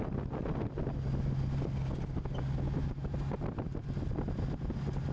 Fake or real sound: real